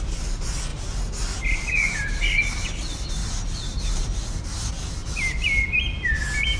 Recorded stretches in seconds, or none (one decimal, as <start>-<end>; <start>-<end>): 0.0-3.2; 4.7-6.6